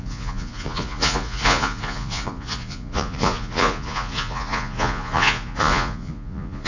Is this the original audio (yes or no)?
no